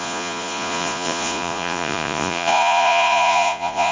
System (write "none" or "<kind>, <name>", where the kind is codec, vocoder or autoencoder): vocoder, Vocos